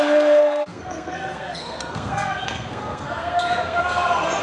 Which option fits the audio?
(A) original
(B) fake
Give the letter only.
B